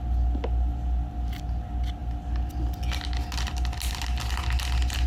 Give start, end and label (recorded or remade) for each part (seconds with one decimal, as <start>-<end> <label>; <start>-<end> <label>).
0.0-5.1 recorded